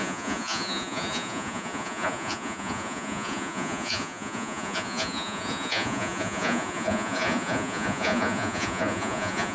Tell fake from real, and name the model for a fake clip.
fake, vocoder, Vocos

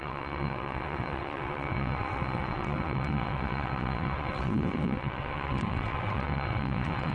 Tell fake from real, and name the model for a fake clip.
fake, vocoder, WaveNeXt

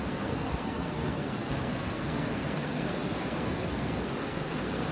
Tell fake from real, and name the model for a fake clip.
fake, codec, SNAC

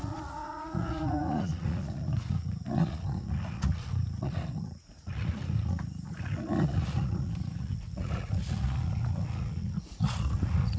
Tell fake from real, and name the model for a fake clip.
fake, vocoder, Vocos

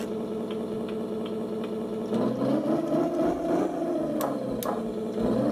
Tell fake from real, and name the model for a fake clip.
real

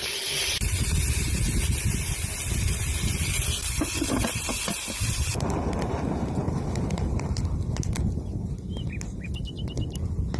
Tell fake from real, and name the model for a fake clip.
real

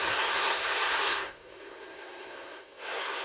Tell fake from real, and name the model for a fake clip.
fake, codec, SNAC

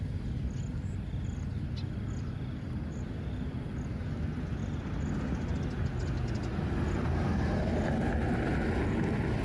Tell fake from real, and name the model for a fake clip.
real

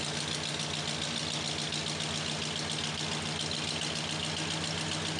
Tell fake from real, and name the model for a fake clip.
real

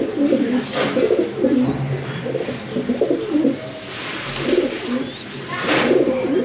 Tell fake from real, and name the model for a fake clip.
real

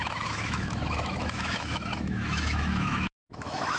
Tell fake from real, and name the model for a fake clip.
fake, autoencoder, DAC-VAE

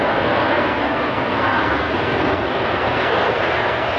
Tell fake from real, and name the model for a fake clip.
fake, codec, SNAC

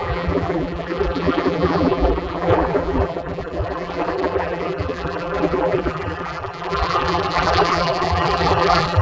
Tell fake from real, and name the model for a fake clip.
fake, vocoder, BigVGAN v2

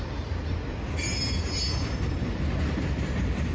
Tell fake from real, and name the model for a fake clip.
real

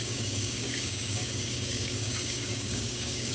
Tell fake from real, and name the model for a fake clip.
fake, codec, DAC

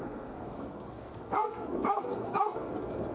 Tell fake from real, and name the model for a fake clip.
fake, codec, SNAC